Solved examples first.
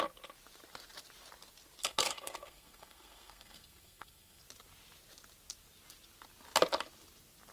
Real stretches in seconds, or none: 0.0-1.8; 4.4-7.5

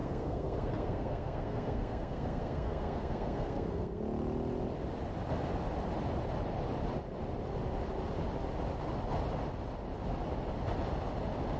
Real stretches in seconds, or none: 4.0-11.6

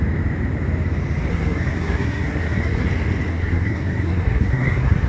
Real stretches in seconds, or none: 0.0-1.3; 2.9-3.3

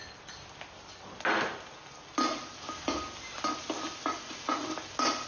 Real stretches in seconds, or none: 0.0-5.3

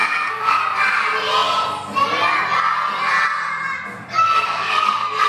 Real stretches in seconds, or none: 0.6-4.1

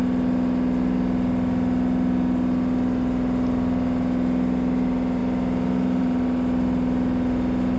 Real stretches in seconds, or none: 0.0-7.8